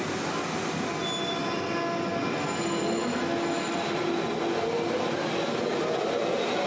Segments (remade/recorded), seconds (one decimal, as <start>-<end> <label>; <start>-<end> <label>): 0.0-6.7 recorded